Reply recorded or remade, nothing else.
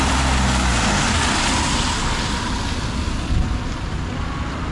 recorded